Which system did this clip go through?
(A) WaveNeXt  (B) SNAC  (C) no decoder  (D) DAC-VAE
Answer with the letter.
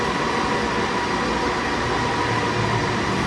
C